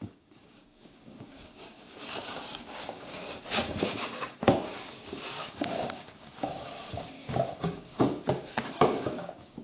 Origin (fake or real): fake